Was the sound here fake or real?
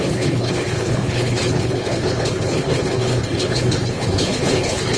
fake